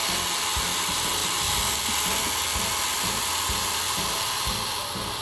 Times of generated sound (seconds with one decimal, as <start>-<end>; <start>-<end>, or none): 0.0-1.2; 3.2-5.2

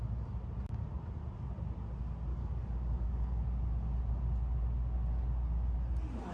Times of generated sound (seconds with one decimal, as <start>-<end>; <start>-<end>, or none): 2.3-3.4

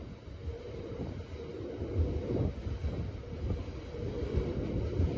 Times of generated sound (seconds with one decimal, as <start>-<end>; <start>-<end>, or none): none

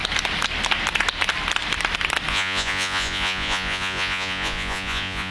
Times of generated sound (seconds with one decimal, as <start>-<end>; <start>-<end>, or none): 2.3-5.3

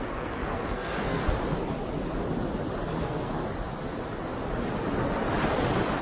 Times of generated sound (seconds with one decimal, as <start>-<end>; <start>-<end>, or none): 0.0-1.2; 3.0-3.4